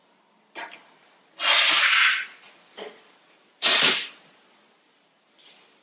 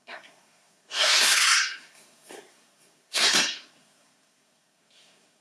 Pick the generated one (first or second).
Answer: second